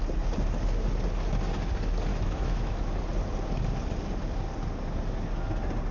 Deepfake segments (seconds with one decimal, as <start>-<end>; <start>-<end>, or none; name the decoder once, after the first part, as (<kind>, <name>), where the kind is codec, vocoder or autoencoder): 2.1-2.9 (autoencoder, DAC-VAE)